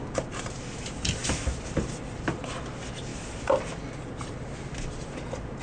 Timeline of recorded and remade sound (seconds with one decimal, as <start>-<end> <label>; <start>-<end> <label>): 0.0-5.6 recorded